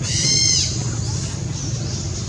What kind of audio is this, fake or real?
real